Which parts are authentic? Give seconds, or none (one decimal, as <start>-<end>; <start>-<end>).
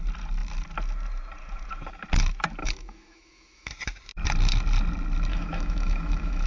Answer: 0.0-2.6; 3.7-5.3